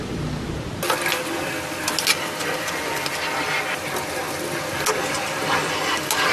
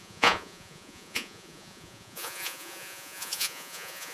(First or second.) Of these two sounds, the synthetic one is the second